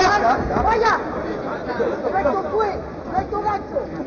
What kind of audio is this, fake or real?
real